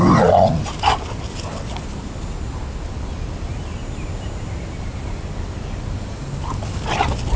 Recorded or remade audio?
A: recorded